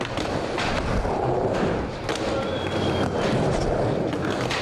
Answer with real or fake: real